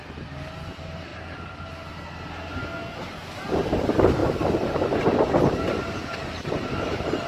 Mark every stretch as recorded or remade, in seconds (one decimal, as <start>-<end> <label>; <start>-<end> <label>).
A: 0.0-2.6 recorded; 2.6-3.1 remade; 3.1-7.3 recorded